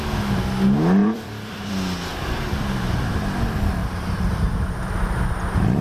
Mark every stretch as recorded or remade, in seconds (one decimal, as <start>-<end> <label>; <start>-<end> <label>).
0.0-1.0 recorded; 1.0-1.7 remade; 1.7-2.1 recorded; 2.1-3.1 remade; 3.1-3.8 recorded; 3.8-4.3 remade; 4.3-5.8 recorded